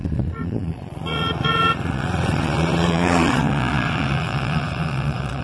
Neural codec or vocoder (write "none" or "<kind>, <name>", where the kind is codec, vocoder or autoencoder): vocoder, Vocos